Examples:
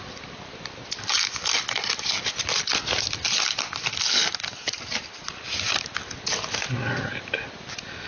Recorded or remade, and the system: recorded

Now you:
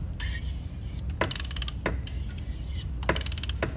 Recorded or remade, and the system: recorded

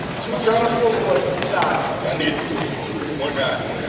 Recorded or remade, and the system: remade, vocoder, WaveNeXt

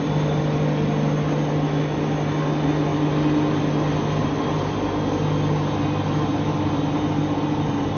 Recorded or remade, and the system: recorded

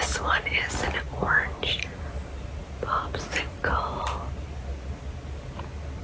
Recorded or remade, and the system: recorded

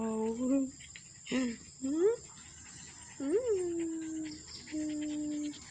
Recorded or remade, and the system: recorded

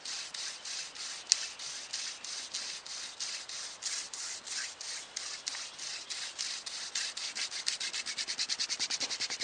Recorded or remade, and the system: recorded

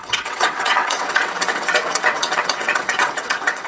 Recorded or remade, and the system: remade, vocoder, WaveNeXt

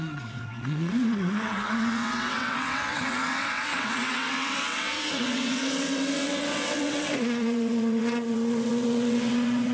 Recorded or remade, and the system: remade, vocoder, WaveNeXt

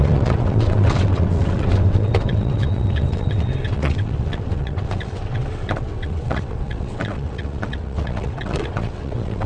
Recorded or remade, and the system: remade, vocoder, WaveNeXt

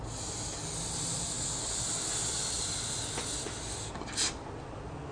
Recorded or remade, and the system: recorded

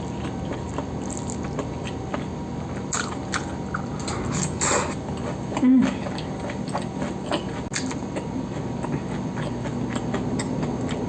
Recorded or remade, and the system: recorded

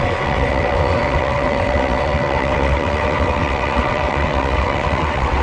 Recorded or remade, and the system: remade, vocoder, WaveNeXt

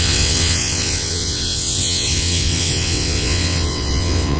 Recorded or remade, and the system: remade, vocoder, WaveNeXt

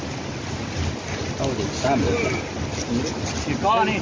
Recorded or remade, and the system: recorded